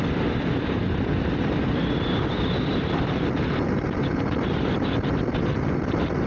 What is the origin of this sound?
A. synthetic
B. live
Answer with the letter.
B